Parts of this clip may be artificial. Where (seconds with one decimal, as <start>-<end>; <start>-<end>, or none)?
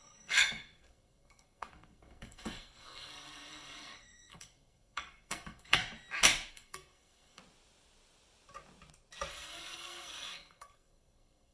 0.0-5.8; 6.5-7.4; 9.3-11.5